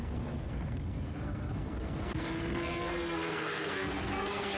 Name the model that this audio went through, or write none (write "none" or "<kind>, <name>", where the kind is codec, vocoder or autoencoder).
codec, SNAC